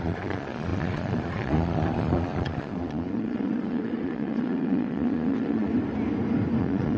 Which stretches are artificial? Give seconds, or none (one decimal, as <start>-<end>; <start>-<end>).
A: 0.0-5.7; 6.6-7.0